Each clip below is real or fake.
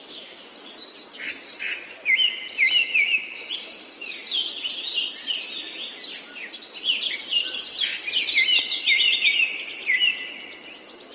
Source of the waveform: real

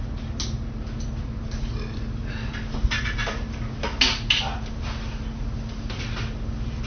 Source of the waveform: real